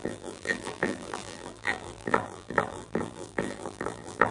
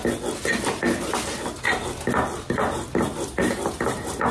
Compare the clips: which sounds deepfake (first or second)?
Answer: first